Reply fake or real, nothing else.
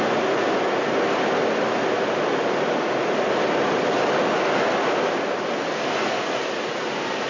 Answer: real